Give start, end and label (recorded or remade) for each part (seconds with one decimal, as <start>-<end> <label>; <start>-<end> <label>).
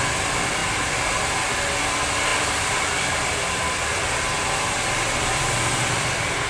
0.0-0.6 recorded; 0.6-1.2 remade; 1.2-2.3 recorded; 2.3-3.4 remade; 3.4-6.5 recorded